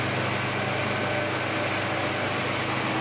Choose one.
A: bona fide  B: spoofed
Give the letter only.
A